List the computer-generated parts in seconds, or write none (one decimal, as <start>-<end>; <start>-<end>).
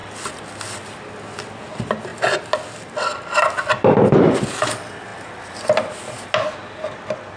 none